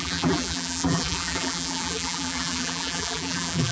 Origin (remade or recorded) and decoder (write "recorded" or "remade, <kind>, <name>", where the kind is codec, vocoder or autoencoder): remade, vocoder, BigVGAN v2